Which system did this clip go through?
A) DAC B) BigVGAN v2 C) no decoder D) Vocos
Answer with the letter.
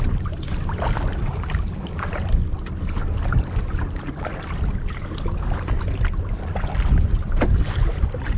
C